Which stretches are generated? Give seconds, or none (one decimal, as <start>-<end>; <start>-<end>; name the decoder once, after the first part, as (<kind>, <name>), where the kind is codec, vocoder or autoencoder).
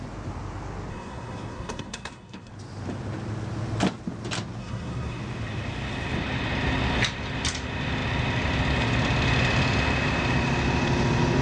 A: 0.9-2.5 (codec, SNAC); 4.6-5.2